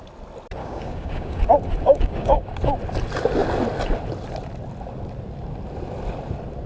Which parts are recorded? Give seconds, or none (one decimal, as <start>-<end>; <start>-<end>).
0.0-0.6; 1.4-1.9; 2.4-6.7